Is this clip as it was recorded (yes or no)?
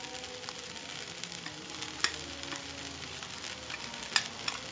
yes